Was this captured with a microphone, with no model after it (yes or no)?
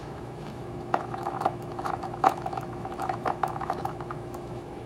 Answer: no